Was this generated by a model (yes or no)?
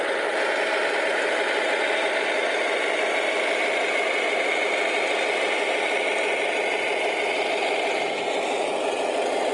no